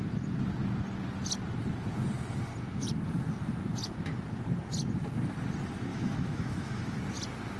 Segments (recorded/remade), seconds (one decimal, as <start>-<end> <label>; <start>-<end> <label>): 0.0-5.9 recorded; 5.9-7.0 remade; 7.0-7.6 recorded